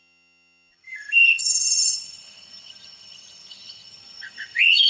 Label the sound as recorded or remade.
remade